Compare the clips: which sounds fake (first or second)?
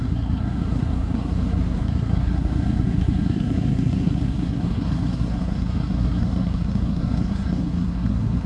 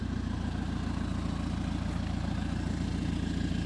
first